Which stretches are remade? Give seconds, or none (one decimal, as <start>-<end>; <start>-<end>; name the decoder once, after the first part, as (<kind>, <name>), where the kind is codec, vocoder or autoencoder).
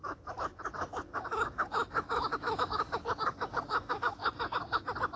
0.0-4.2 (autoencoder, DAC-VAE)